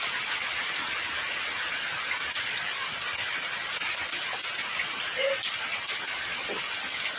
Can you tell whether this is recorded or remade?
recorded